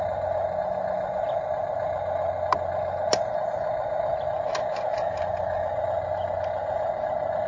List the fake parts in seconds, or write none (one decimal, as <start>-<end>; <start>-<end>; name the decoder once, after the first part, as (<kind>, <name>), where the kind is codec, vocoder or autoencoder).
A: none